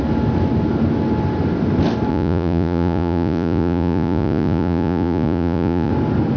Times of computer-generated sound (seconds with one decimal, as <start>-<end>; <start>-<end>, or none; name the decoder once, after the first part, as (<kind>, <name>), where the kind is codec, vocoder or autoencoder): 2.1-5.9 (vocoder, Vocos)